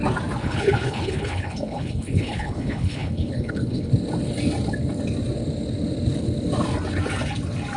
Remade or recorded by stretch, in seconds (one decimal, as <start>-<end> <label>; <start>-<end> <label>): 0.0-0.4 recorded; 0.4-3.9 remade; 3.9-7.8 recorded